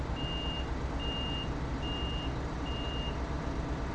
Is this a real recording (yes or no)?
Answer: yes